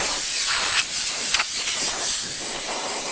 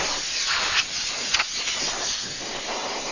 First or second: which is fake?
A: first